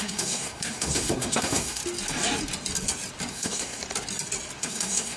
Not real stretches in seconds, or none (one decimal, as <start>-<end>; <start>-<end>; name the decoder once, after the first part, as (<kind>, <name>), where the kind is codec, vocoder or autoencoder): 0.0-1.8 (codec, SNAC); 3.3-3.8; 4.6-5.2